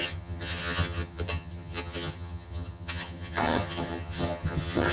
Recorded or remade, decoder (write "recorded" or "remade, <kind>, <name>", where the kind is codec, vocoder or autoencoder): remade, vocoder, HiFi-GAN